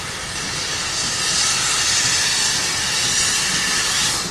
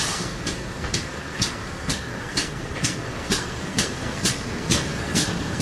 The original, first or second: first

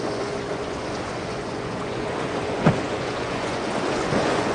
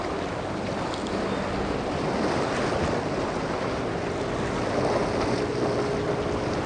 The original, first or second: second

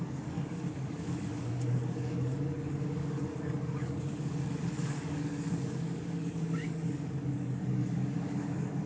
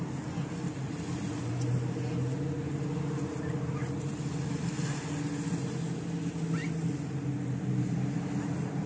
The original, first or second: second